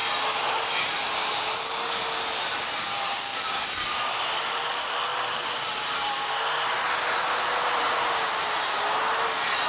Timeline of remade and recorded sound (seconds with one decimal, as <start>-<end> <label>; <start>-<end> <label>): 0.0-0.6 recorded; 0.6-9.7 remade